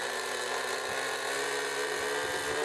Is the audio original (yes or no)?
yes